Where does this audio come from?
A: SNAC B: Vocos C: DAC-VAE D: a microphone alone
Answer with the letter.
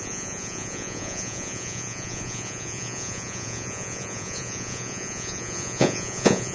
B